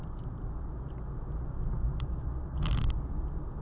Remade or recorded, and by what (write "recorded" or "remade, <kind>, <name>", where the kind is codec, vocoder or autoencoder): recorded